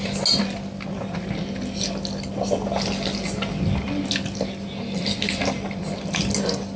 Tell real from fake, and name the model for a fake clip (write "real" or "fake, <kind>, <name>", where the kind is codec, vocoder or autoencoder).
real